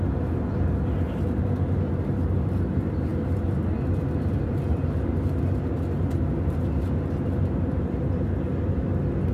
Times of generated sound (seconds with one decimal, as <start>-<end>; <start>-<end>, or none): none